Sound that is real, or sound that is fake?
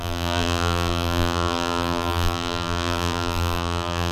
fake